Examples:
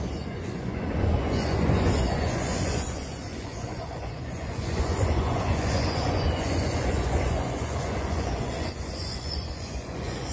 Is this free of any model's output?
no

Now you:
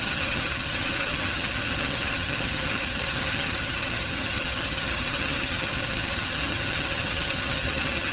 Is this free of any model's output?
no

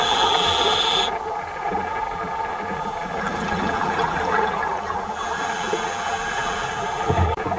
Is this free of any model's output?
no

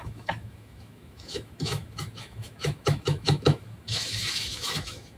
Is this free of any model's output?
no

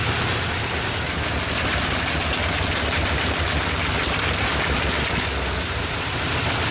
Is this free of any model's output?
yes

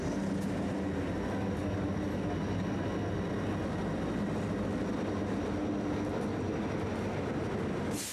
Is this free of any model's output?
yes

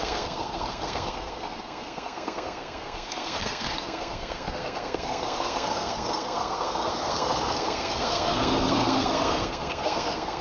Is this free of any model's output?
no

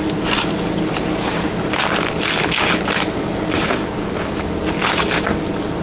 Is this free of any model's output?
yes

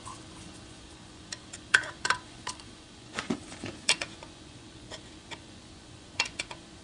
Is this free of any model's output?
no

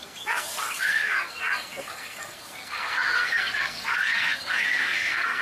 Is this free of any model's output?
no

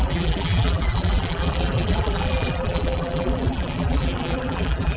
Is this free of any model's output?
no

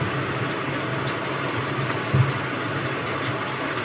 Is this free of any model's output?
yes